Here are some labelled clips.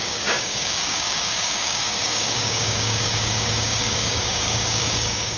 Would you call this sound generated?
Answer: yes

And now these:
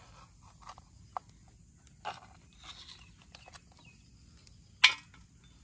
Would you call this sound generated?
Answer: no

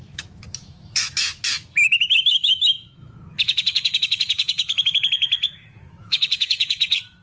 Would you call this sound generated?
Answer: yes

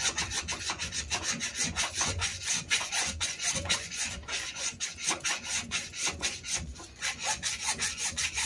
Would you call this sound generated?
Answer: yes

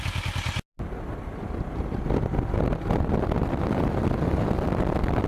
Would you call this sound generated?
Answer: no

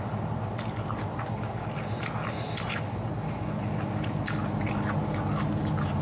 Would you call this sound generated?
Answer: no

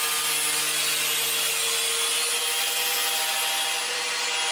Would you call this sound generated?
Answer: no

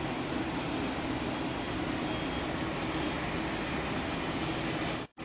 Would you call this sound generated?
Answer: no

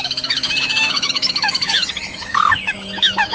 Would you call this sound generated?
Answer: yes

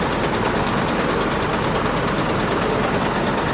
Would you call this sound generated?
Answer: no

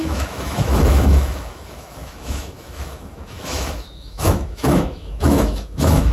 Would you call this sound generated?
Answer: yes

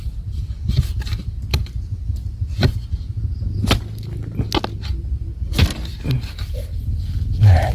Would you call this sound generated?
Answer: no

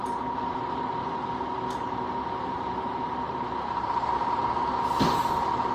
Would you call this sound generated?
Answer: no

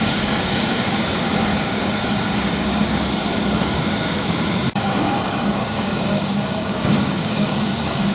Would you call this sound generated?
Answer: yes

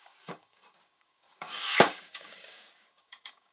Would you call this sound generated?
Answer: yes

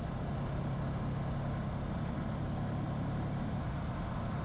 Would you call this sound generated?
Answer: no